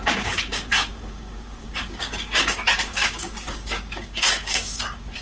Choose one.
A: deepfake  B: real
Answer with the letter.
A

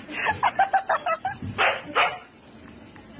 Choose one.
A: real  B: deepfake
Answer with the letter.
A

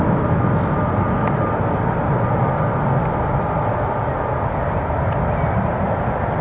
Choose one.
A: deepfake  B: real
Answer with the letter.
B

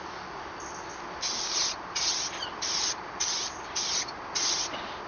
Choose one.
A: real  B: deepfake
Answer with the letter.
A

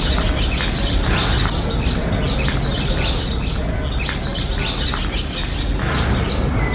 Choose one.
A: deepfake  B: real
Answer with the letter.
B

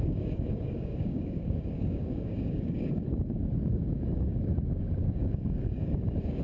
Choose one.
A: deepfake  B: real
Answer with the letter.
A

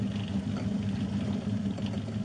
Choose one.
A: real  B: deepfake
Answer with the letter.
A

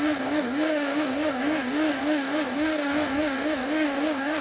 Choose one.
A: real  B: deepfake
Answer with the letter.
B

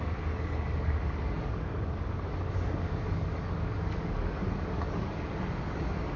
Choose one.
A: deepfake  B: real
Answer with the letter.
A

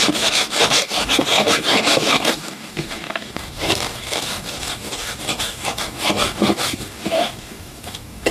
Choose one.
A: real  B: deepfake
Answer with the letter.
B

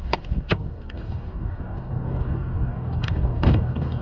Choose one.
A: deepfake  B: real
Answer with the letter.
A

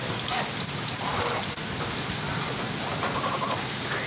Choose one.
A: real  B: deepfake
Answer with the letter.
A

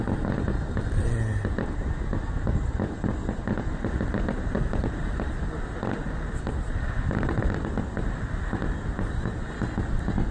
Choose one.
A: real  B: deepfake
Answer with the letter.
A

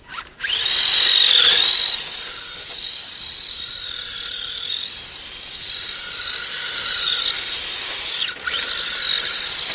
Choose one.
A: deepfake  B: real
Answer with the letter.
B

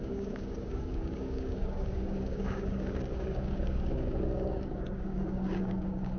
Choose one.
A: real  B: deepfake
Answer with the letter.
B